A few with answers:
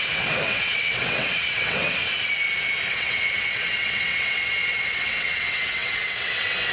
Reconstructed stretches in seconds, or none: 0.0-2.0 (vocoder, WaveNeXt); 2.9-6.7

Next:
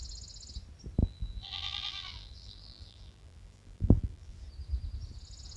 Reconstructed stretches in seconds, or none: 1.0-4.4 (vocoder, BigVGAN v2)

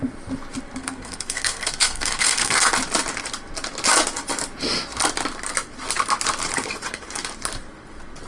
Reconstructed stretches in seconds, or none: 0.8-2.7 (codec, SNAC)

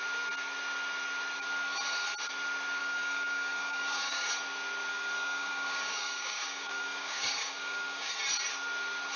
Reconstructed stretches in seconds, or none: 2.8-4.3 (codec, DAC); 4.9-8.1

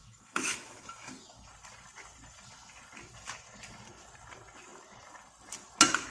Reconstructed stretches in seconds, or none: 0.0-1.5 (autoencoder, DAC-VAE)